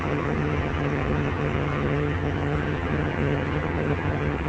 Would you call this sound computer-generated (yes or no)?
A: yes